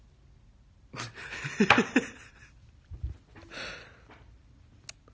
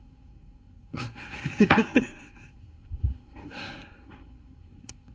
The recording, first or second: first